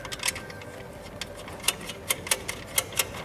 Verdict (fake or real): real